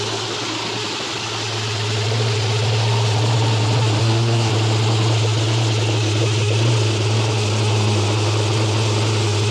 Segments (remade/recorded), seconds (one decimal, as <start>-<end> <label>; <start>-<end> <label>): 0.0-4.0 recorded; 4.0-4.5 remade; 4.5-9.5 recorded